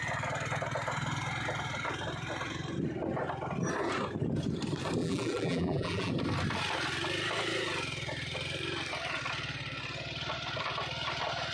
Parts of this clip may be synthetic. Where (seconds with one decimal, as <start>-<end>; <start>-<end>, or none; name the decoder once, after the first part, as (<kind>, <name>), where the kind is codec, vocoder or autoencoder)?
5.0-6.1 (vocoder, BigVGAN v2)